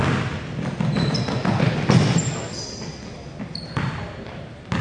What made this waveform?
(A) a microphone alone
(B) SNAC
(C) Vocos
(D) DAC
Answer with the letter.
A